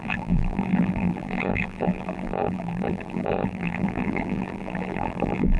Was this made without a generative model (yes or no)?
no